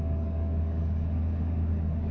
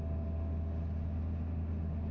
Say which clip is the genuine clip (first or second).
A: second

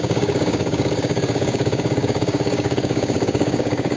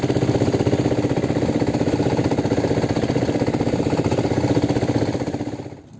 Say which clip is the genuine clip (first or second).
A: second